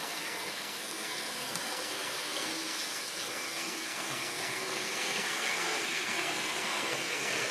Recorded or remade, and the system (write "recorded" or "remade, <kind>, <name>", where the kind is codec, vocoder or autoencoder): remade, codec, SNAC